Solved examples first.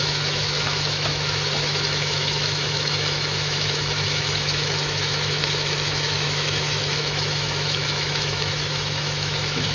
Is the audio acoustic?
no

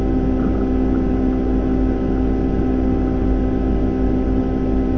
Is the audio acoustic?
yes